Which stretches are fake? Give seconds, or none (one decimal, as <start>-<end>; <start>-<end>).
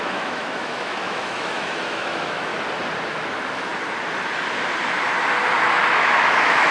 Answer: 0.0-2.5; 3.1-3.7; 5.9-6.7